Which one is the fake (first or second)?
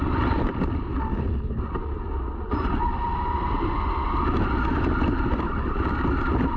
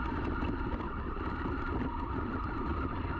second